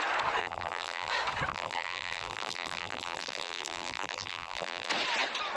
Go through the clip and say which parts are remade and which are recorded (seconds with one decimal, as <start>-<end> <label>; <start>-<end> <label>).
0.0-0.4 recorded; 0.4-1.1 remade; 1.1-1.5 recorded; 1.5-4.9 remade; 4.9-5.6 recorded